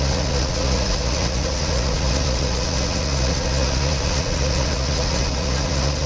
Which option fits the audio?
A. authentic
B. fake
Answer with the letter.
B